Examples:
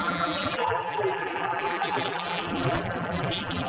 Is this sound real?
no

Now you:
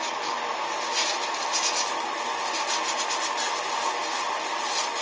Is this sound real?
yes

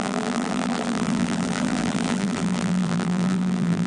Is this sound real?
no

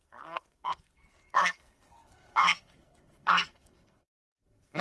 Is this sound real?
no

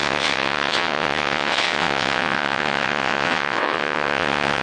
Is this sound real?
no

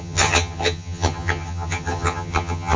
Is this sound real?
no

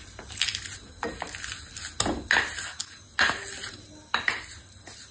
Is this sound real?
yes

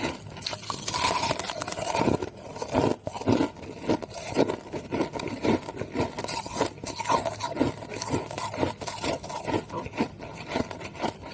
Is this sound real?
yes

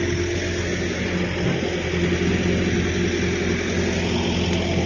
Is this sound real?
yes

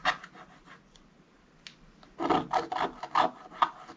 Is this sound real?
yes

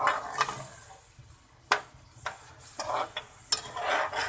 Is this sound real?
yes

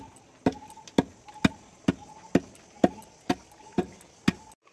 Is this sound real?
yes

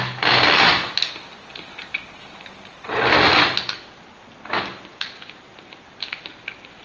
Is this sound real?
yes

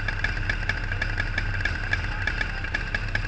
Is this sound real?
yes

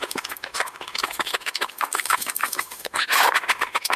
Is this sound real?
no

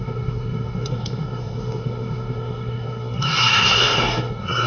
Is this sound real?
no